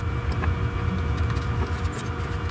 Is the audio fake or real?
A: real